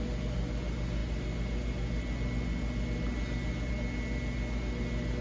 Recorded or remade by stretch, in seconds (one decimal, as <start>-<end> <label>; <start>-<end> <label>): 0.0-5.2 recorded